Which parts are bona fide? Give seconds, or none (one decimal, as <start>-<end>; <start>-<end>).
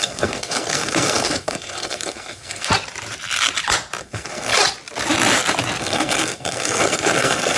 2.7-4.0; 4.5-5.8